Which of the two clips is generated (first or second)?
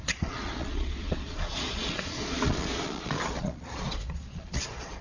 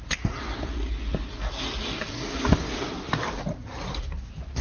first